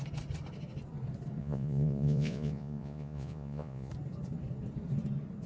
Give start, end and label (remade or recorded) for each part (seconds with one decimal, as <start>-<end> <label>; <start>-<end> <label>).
0.0-1.4 recorded; 1.4-3.9 remade; 3.9-5.5 recorded